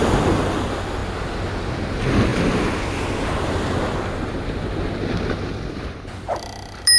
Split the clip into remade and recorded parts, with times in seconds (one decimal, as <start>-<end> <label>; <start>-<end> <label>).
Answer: 0.0-7.0 recorded